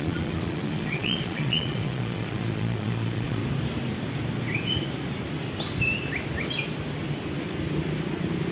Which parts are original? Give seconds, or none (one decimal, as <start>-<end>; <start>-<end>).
3.4-8.5